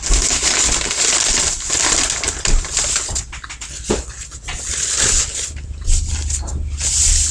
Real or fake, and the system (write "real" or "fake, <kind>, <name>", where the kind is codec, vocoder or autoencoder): real